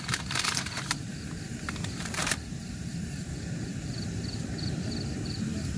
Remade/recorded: remade